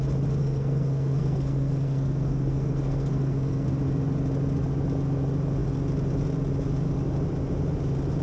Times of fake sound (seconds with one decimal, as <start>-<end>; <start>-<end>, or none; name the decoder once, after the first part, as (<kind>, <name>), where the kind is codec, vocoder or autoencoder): 0.4-3.7 (codec, SNAC)